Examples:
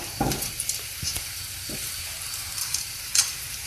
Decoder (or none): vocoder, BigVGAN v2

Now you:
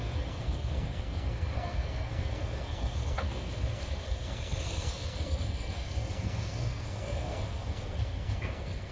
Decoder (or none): codec, SNAC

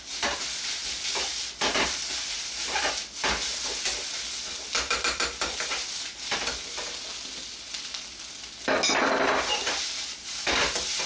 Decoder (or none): none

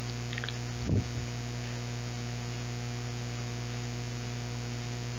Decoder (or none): none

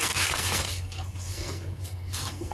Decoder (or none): codec, SNAC